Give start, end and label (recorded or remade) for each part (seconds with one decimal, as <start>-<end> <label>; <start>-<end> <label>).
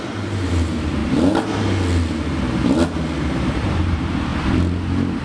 0.0-1.0 remade; 1.0-3.2 recorded; 3.2-4.3 remade; 4.3-5.2 recorded